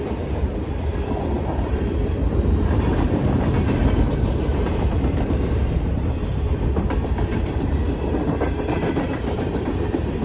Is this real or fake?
fake